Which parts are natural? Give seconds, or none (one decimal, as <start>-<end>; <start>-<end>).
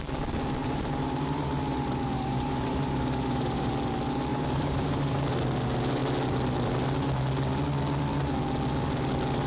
0.0-0.6; 3.7-4.3; 5.2-9.5